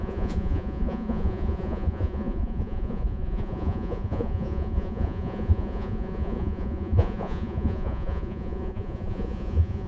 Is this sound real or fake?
fake